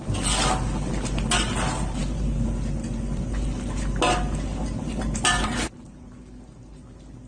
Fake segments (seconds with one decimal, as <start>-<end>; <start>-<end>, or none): none